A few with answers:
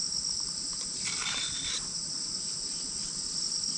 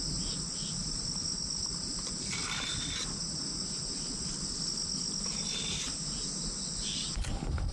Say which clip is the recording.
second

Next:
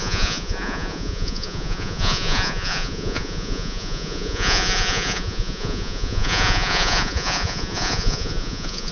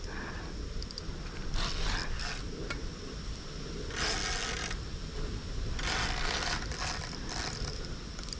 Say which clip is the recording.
second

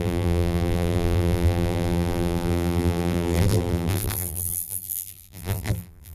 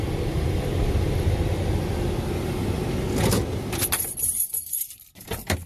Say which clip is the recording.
second